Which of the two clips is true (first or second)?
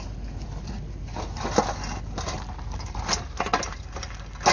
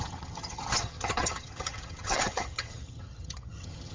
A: first